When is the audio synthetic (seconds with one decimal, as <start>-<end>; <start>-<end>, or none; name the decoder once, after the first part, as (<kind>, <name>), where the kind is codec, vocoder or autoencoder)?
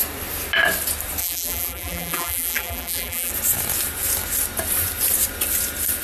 1.2-3.3 (vocoder, BigVGAN v2)